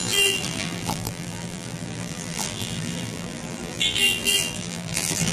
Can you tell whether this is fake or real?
fake